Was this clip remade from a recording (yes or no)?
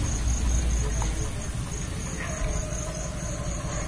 no